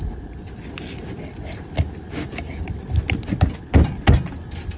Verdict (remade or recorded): recorded